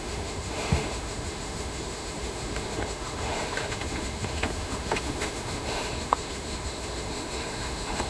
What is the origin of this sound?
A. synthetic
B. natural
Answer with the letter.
A